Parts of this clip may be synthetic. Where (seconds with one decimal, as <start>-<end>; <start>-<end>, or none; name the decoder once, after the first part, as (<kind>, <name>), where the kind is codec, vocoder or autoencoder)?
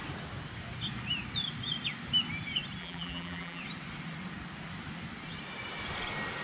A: 2.8-3.6 (vocoder, BigVGAN v2)